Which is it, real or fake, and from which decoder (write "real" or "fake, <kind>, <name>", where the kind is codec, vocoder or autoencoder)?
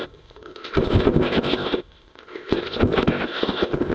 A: fake, codec, ZipCodec